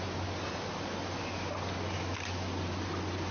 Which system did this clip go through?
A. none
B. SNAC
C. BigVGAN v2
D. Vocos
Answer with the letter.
A